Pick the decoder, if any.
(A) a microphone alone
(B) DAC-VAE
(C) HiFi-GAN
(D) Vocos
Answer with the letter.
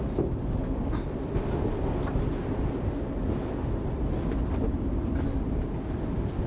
A